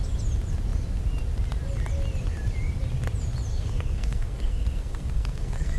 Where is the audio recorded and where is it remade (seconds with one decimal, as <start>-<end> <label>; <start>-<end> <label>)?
0.0-3.5 recorded; 3.5-5.8 remade